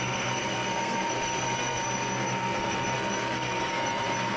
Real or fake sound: fake